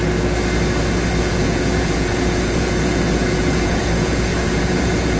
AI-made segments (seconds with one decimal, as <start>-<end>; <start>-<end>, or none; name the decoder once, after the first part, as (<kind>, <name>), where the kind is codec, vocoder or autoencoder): 1.2-5.2 (vocoder, Vocos)